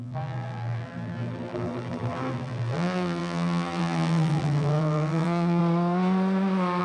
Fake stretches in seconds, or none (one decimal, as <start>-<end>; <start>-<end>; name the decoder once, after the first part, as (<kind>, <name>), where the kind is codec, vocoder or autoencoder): 0.0-5.6 (vocoder, BigVGAN v2)